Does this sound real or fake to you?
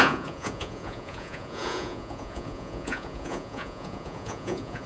fake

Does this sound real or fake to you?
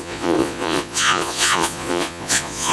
fake